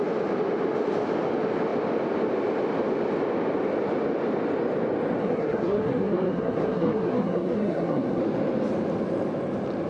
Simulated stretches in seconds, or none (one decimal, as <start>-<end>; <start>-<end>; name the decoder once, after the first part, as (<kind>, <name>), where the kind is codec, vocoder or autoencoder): 5.2-8.2 (codec, SNAC)